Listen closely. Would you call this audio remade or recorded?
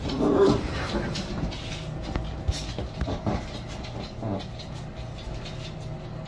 recorded